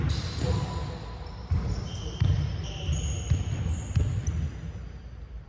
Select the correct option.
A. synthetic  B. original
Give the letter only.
B